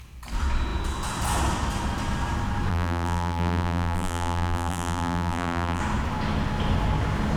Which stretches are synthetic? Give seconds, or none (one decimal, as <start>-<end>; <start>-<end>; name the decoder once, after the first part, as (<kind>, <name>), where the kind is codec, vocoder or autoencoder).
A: 2.7-5.8 (vocoder, BigVGAN v2)